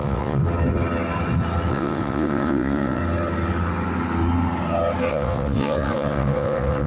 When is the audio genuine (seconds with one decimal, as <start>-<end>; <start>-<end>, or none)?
0.4-1.7; 3.0-5.1